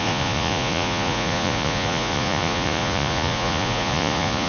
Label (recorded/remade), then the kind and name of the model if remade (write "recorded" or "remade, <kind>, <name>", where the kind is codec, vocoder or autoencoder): remade, vocoder, Vocos